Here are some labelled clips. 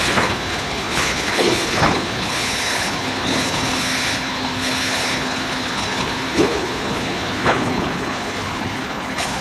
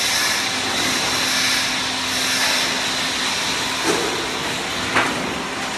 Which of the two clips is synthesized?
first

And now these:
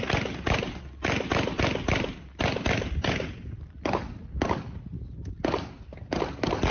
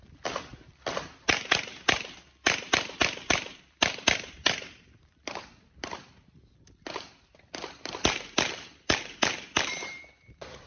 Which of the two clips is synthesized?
second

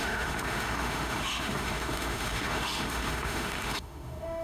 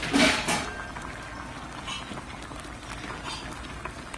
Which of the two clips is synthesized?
first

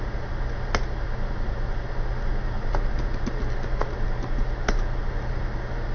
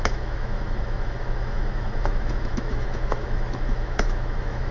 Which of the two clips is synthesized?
second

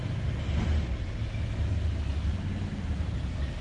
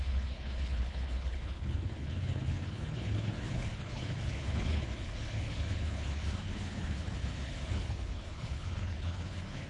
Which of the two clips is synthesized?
second